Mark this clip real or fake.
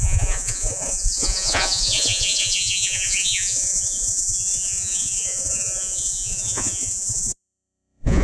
fake